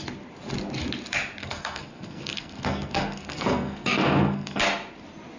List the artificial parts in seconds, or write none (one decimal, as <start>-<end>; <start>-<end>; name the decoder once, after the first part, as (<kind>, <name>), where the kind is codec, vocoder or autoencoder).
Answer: 1.4-4.6 (codec, SNAC)